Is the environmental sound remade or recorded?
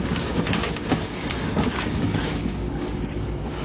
remade